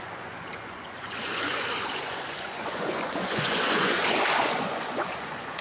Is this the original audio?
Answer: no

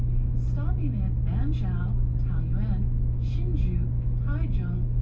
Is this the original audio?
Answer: yes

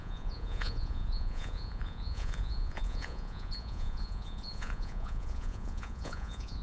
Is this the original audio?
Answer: no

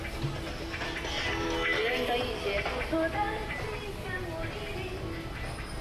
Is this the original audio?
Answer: yes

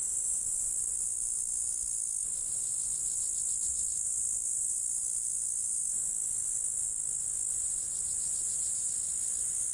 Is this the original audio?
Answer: yes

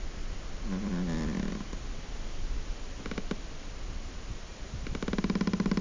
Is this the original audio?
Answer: yes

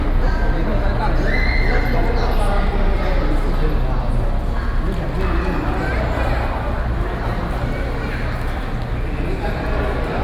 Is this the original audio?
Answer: yes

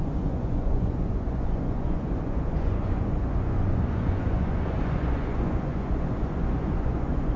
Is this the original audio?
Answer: no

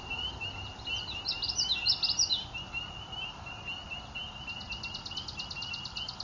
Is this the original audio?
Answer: yes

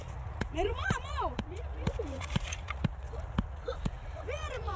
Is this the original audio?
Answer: no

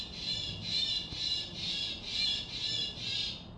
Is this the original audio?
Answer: yes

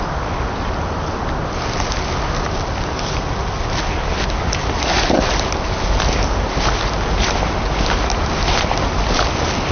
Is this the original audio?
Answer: yes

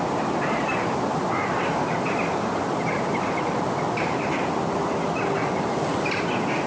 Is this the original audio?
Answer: yes